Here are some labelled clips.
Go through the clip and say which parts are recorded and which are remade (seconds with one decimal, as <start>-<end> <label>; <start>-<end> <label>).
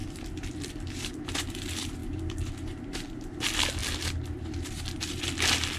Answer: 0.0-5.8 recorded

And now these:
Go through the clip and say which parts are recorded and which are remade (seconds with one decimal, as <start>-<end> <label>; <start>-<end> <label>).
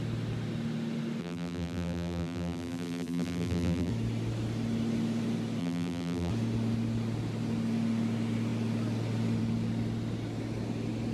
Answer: 0.0-1.2 recorded; 1.2-3.9 remade; 3.9-5.6 recorded; 5.6-6.3 remade; 6.3-11.1 recorded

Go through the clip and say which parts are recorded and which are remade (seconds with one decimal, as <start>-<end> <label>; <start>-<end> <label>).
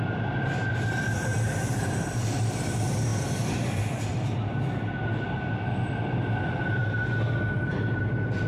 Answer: 0.0-6.8 remade; 6.8-7.7 recorded; 7.7-8.5 remade